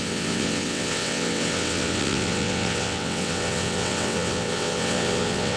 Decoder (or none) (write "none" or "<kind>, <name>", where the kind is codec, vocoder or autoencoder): vocoder, WaveNeXt